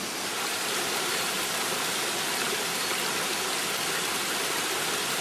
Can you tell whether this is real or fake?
real